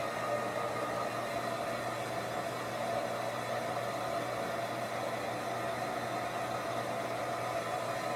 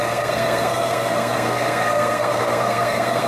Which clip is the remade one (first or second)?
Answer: second